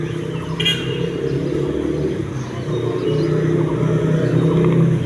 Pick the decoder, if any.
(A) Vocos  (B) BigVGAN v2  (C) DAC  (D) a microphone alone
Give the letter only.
D